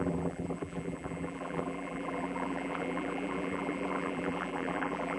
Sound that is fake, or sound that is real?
fake